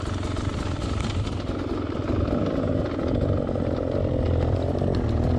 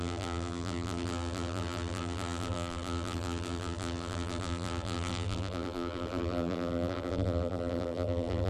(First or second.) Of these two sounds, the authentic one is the first